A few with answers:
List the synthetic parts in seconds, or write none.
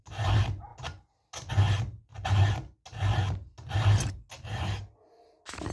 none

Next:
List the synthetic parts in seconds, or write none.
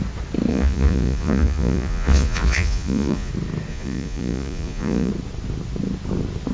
0.5-3.3 (vocoder, Vocos); 3.7-5.1